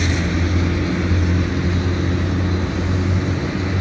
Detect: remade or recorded recorded